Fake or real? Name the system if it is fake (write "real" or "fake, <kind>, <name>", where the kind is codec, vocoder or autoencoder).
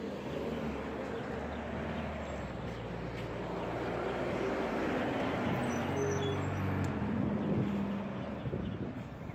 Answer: real